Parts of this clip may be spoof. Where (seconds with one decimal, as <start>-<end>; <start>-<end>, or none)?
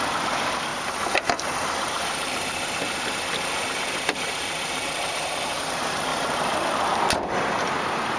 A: none